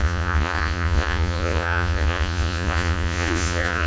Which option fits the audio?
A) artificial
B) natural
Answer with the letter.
A